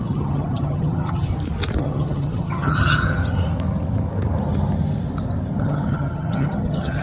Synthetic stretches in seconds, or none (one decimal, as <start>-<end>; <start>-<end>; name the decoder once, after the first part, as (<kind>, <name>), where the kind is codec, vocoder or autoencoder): 0.0-1.3 (vocoder, HiFi-GAN); 1.8-3.2; 5.6-7.0